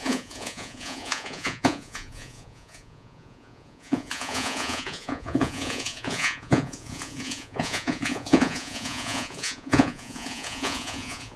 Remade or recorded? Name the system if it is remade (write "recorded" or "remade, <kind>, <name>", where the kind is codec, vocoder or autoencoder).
remade, vocoder, Vocos